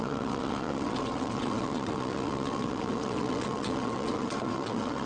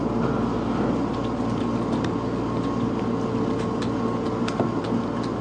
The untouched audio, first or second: second